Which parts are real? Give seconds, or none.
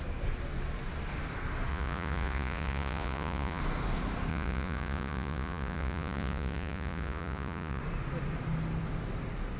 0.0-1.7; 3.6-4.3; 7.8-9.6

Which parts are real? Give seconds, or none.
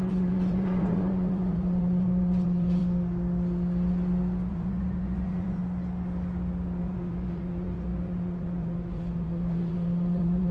2.8-4.5; 5.6-6.8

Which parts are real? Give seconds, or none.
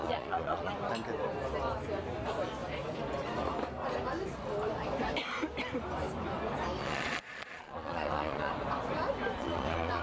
0.7-6.8; 8.5-9.4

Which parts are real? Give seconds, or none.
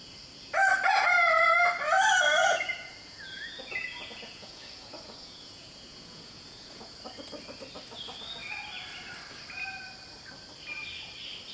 0.0-2.4; 7.0-11.5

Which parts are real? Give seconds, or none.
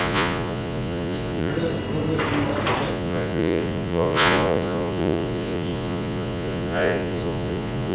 1.5-2.9